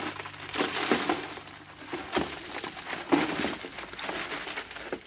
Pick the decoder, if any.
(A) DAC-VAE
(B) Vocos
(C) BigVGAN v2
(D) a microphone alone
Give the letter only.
D